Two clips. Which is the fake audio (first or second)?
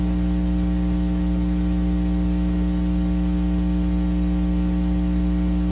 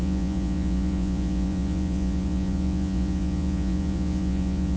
second